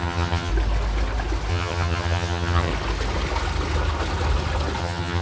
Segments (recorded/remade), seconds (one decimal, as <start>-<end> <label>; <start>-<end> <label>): 0.0-0.5 remade; 0.5-1.5 recorded; 1.5-2.7 remade; 2.7-4.8 recorded; 4.8-5.2 remade